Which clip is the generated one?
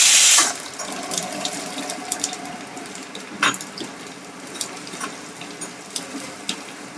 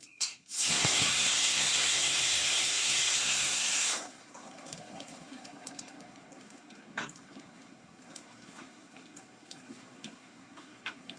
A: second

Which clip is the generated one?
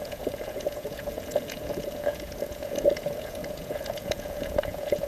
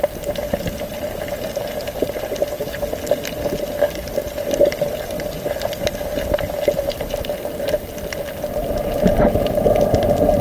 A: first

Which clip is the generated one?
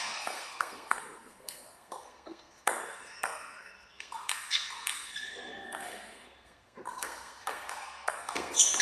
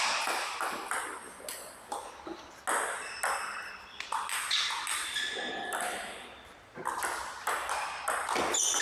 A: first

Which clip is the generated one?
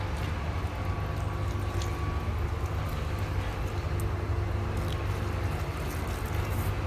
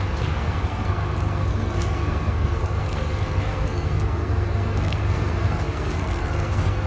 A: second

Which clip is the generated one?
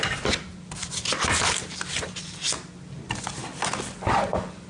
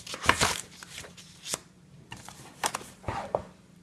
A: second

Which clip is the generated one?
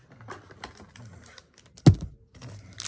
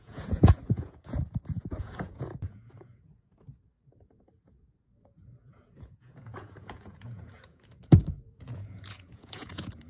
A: second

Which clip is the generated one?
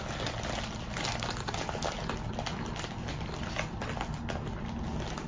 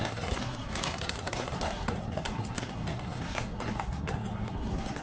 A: second